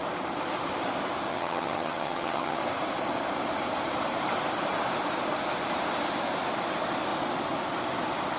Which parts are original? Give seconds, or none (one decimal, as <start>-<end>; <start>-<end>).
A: 0.0-1.3; 2.6-8.4